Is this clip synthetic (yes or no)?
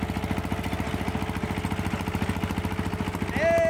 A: no